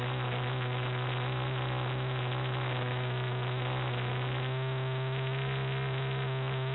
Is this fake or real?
real